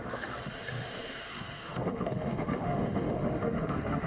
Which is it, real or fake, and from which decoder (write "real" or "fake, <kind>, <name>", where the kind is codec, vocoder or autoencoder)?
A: fake, autoencoder, DAC-VAE